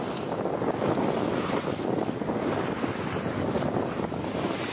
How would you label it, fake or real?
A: real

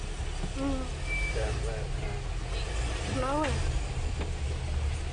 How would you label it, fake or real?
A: real